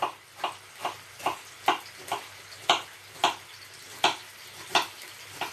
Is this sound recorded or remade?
recorded